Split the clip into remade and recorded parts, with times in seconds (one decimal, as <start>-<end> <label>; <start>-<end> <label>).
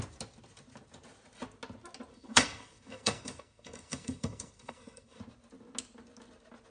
0.0-2.1 recorded; 2.1-5.2 remade; 5.2-6.7 recorded